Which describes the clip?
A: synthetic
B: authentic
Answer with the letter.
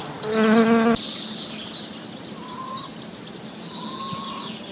B